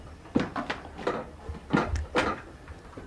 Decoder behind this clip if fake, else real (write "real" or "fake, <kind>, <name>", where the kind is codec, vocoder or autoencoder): fake, vocoder, BigVGAN v2